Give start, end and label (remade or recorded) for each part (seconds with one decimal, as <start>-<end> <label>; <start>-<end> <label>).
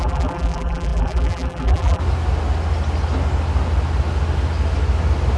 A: 0.0-2.0 remade; 2.0-5.4 recorded